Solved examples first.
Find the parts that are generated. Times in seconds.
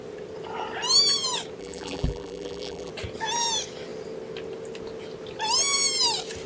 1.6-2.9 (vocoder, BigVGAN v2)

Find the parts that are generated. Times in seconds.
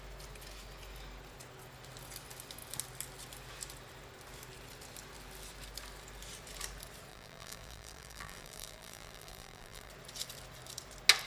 7.1-9.9 (vocoder, BigVGAN v2)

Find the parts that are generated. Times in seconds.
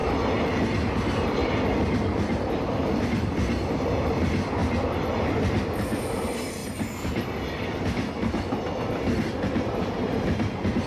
0.9-1.4 (vocoder, BigVGAN v2); 2.9-4.6; 5.2-6.6; 7.8-10.9